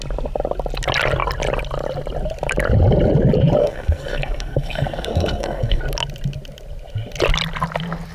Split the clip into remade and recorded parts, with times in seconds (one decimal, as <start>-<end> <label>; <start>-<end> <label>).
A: 0.0-3.6 recorded; 3.6-5.8 remade; 5.8-8.1 recorded